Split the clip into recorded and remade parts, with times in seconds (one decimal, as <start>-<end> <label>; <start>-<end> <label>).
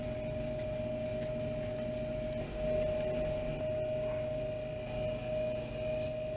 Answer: 0.0-6.4 recorded